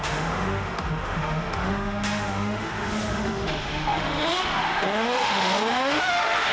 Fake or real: fake